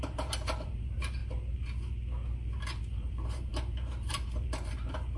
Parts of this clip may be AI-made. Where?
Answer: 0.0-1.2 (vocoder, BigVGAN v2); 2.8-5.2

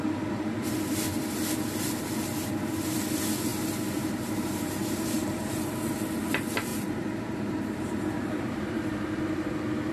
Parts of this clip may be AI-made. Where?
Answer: 3.5-5.9 (vocoder, BigVGAN v2); 6.7-9.2

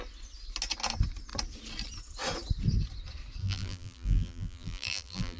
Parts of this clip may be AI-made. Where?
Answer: 3.4-5.4 (vocoder, BigVGAN v2)